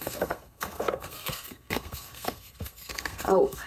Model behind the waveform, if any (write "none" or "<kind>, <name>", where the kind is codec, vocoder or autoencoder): codec, SNAC